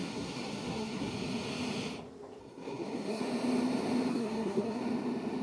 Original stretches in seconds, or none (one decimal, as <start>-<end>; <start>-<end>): 1.1-2.4; 3.2-4.1; 4.8-5.4